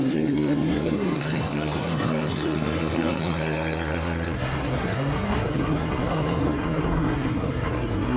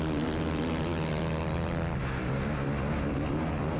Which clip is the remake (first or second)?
first